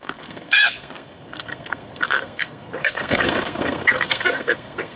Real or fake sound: fake